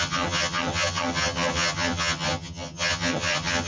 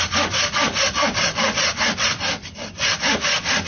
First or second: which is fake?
first